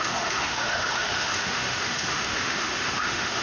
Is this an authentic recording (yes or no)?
no